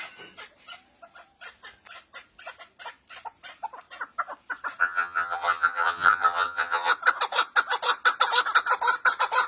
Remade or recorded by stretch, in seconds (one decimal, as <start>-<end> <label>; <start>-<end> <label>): 0.0-4.8 recorded; 4.8-6.9 remade; 6.9-9.5 recorded